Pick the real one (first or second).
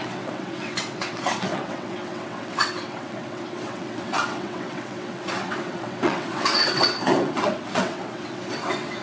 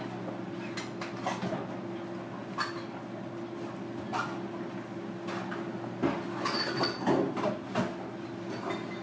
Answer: second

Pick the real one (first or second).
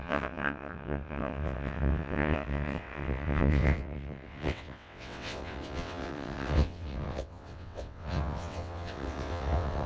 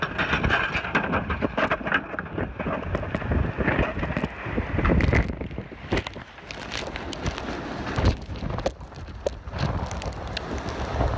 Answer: second